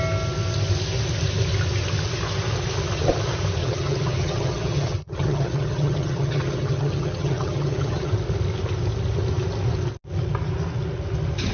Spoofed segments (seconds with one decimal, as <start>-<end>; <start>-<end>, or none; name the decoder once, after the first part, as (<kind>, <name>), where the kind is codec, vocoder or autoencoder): 3.6-8.1 (vocoder, HiFi-GAN)